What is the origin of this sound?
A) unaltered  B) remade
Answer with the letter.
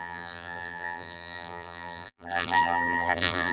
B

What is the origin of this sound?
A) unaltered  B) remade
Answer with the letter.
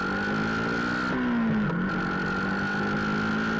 A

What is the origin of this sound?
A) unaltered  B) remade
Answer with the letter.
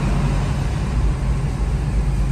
A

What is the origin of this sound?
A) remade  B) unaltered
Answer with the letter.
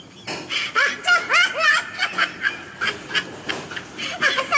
B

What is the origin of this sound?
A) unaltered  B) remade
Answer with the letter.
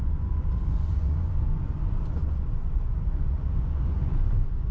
B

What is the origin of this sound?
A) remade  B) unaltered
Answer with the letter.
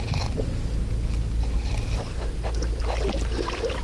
B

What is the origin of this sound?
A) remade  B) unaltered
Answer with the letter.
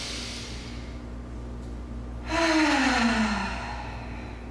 B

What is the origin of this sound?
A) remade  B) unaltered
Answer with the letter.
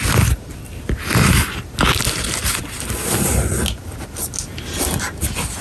B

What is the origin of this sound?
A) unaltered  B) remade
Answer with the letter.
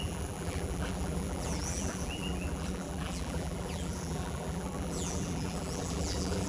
B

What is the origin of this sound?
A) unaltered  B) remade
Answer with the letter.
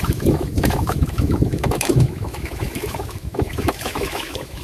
B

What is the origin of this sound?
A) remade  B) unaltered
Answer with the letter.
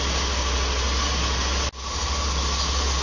B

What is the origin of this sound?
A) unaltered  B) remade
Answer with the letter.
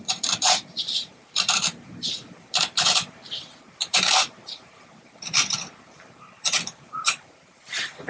B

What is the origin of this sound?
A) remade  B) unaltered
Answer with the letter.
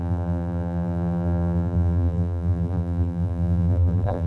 A